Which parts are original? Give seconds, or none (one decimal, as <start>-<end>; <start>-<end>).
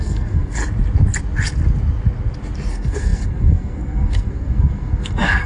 0.6-2.7